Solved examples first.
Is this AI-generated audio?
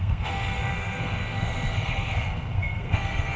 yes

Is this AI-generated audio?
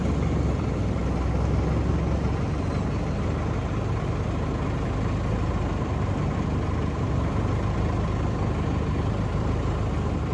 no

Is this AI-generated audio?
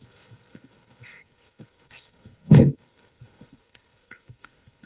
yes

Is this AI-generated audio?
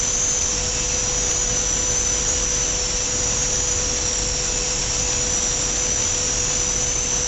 no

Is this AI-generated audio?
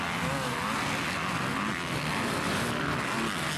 no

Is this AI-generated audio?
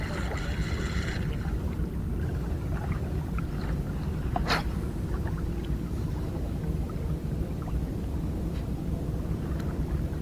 no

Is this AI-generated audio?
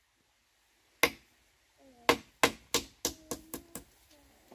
no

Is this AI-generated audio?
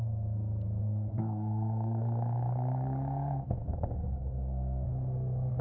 yes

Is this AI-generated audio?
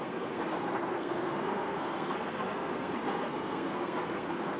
yes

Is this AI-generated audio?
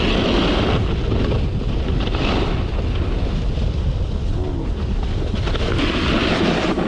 no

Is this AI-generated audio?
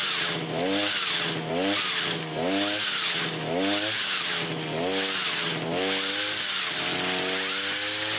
no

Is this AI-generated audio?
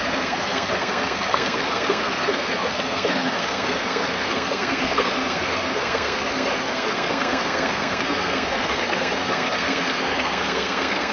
yes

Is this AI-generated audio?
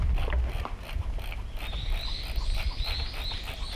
no